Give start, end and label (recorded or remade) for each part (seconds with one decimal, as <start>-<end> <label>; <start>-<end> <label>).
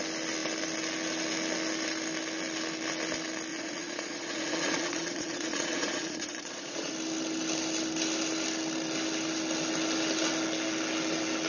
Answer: 0.0-3.5 recorded; 3.5-6.9 remade; 6.9-11.5 recorded